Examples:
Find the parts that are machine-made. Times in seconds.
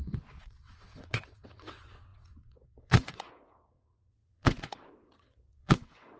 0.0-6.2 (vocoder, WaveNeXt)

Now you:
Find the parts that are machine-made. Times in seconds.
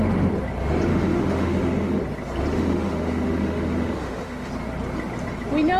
0.9-2.0 (autoencoder, DAC-VAE); 2.5-4.5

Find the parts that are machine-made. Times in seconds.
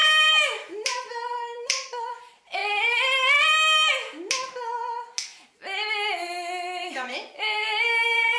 0.0-2.6 (vocoder, BigVGAN v2); 6.8-8.4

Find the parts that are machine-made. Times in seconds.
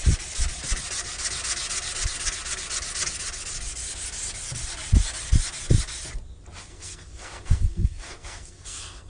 6.7-9.1 (codec, SNAC)